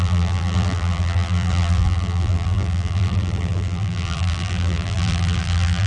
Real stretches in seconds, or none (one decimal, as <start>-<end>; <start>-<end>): none